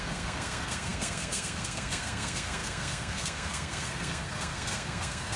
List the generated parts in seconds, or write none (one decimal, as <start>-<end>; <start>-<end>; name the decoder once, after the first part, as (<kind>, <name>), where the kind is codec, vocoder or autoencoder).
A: 0.0-5.4 (codec, SNAC)